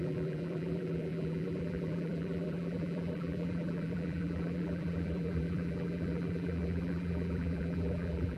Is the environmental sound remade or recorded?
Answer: remade